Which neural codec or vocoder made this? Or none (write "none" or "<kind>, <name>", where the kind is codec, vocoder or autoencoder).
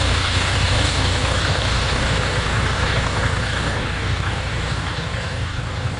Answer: codec, DAC